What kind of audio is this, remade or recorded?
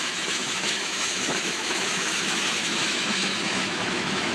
remade